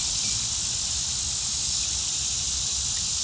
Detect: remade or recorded recorded